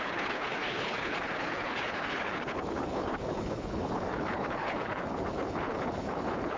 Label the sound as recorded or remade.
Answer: remade